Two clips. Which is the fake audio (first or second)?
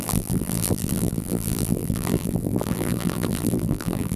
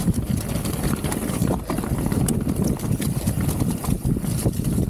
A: first